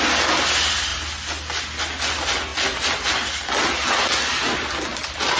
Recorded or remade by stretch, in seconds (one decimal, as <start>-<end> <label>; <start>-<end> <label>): 0.0-5.4 recorded